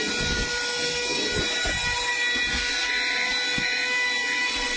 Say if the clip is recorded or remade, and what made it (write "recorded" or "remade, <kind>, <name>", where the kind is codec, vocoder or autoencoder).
recorded